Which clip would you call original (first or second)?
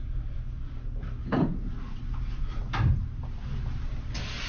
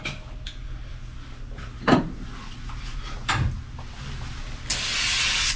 second